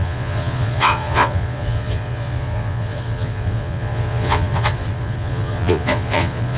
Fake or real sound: fake